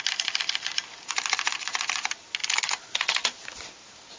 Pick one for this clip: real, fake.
real